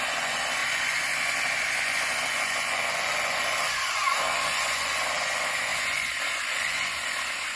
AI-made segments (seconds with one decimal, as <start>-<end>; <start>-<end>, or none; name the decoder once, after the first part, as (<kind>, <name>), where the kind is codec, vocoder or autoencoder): 0.0-7.6 (vocoder, Vocos)